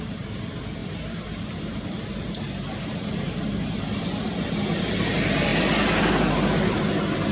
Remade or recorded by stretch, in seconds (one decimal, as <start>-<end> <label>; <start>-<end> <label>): 0.0-0.8 recorded; 0.8-5.0 remade; 5.0-7.3 recorded